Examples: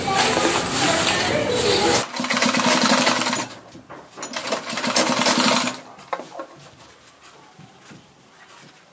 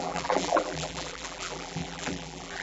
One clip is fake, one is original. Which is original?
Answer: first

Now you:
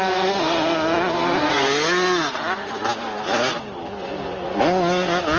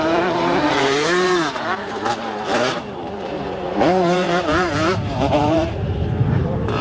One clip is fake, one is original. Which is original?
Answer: first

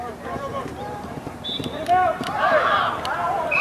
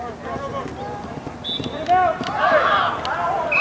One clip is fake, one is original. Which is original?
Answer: second